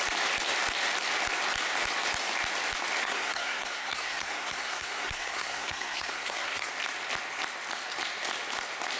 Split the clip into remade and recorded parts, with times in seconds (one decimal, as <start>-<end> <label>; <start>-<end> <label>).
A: 0.0-3.0 recorded; 3.0-6.7 remade; 6.7-9.0 recorded